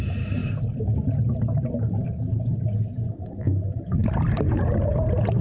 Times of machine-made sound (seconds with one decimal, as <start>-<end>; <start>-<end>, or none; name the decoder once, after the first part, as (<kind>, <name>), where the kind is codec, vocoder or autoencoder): none